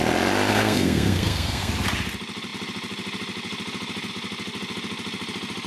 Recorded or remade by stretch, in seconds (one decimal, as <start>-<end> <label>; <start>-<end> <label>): 0.0-0.5 recorded; 0.5-1.7 remade; 1.7-5.7 recorded